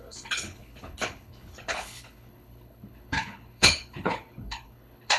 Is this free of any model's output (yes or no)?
no